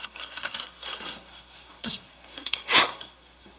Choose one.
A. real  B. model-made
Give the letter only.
B